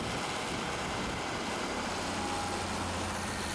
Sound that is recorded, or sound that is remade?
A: recorded